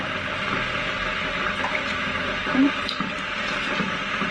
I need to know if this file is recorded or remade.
recorded